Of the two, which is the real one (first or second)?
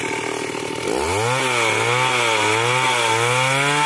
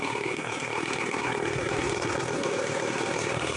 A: first